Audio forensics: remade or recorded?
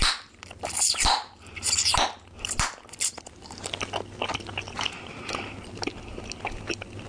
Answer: recorded